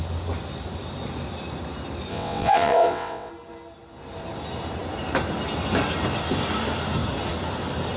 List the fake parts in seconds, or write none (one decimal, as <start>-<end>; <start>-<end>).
2.1-3.3